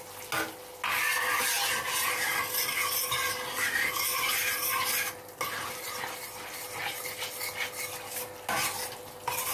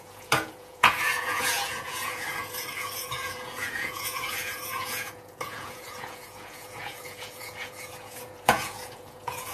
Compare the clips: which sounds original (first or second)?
first